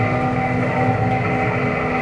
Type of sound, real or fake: real